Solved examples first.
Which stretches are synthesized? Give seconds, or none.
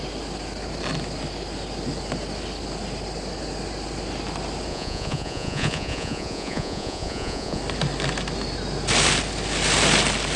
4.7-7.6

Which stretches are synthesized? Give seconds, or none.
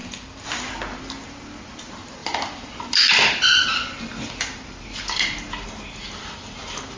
0.0-0.6; 2.2-4.8